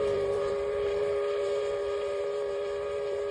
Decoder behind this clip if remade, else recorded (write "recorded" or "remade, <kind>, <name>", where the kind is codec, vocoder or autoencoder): remade, vocoder, BigVGAN v2